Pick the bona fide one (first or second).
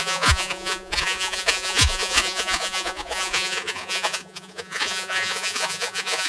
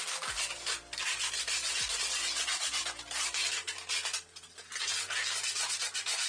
second